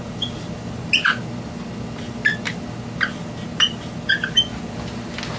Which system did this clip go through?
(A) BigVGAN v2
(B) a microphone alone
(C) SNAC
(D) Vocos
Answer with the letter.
B